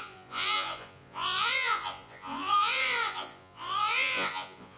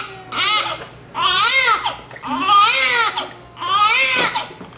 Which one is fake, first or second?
first